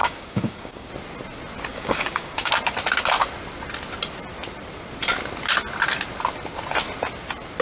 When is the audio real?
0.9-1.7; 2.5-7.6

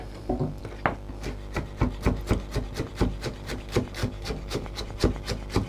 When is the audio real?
0.0-4.0; 4.8-5.7

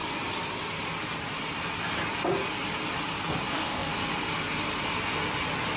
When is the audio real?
0.0-3.5; 3.9-5.8

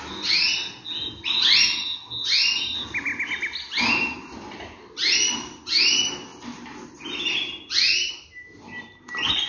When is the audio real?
0.0-9.5

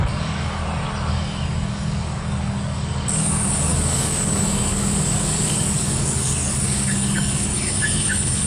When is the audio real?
0.6-1.1

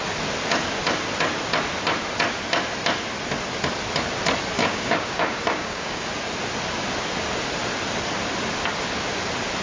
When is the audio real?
0.0-4.6; 6.1-9.6